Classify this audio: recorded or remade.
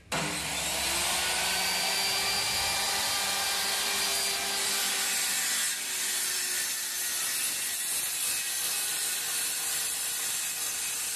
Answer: recorded